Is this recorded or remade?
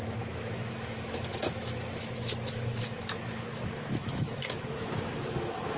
remade